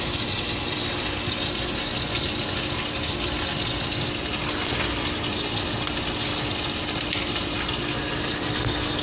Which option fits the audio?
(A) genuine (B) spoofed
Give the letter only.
A